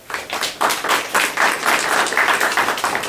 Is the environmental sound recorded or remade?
recorded